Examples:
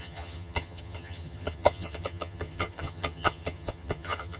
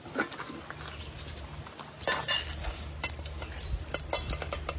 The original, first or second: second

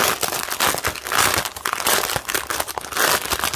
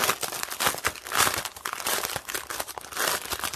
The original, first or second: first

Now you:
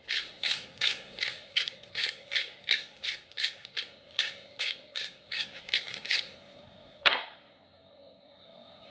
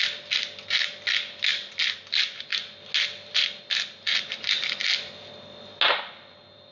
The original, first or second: second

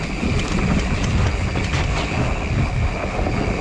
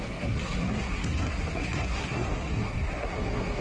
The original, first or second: first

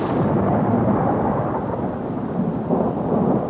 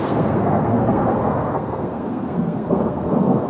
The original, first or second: first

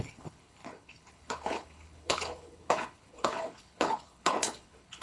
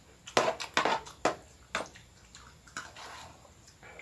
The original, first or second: second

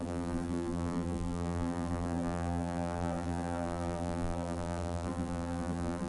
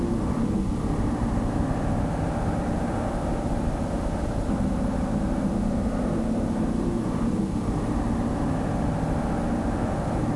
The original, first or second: second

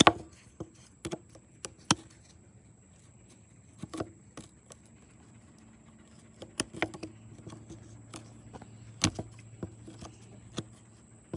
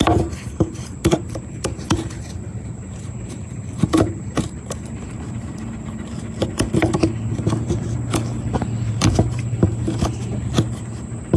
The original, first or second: first